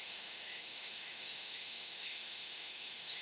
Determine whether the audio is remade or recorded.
remade